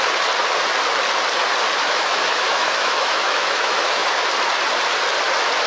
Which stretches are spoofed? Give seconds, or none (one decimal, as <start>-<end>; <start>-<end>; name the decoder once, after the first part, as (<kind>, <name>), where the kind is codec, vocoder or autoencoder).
1.8-4.2 (autoencoder, DAC-VAE)